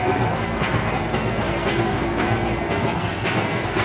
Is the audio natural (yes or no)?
no